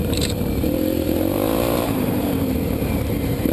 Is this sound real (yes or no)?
no